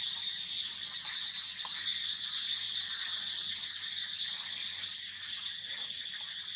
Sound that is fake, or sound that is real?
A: real